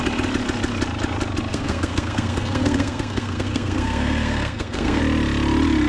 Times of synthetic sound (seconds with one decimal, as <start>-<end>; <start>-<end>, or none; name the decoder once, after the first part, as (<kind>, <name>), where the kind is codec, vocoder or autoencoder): 1.5-5.0 (codec, SNAC)